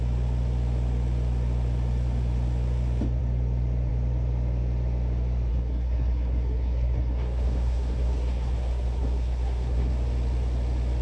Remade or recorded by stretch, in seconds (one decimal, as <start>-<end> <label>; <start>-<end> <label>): 0.0-5.5 recorded; 5.5-9.9 remade; 9.9-11.0 recorded